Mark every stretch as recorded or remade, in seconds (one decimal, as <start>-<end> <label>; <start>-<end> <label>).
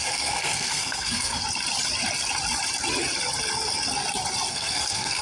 0.0-1.4 remade; 1.4-4.5 recorded; 4.5-5.2 remade